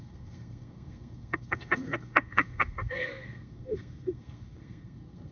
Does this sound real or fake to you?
fake